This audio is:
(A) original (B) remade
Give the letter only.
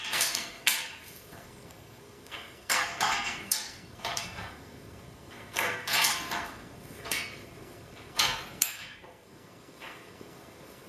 B